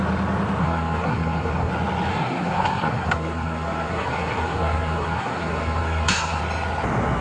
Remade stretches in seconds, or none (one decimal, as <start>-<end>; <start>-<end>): 0.6-1.7; 2.1-6.4